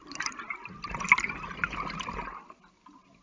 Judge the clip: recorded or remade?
recorded